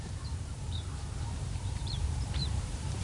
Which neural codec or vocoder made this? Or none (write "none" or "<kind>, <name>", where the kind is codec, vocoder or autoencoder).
vocoder, BigVGAN v2